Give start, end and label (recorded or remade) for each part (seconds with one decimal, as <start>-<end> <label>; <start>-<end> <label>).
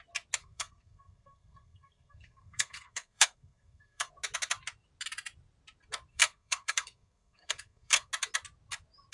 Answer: 0.0-0.4 recorded; 0.4-4.1 remade; 4.1-6.1 recorded; 6.1-8.1 remade; 8.1-9.1 recorded